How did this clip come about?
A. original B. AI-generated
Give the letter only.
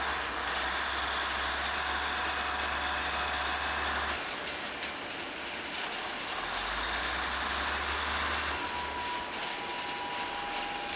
A